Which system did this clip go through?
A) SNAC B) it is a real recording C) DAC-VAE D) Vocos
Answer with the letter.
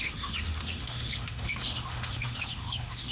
C